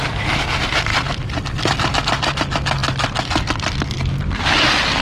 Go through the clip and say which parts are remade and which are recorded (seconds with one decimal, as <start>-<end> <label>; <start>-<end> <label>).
0.0-5.0 recorded